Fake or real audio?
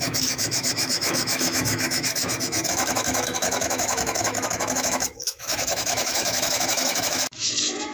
fake